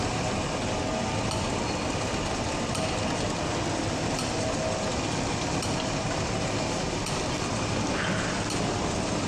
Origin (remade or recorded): recorded